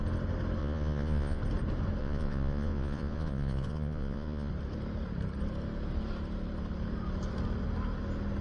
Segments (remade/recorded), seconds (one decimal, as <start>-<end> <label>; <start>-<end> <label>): 0.0-0.6 recorded; 0.6-1.4 remade; 1.4-2.0 recorded; 2.0-4.5 remade; 4.5-8.4 recorded